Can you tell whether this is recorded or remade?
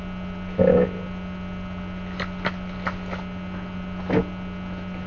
recorded